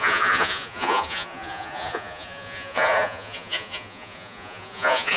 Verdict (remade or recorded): remade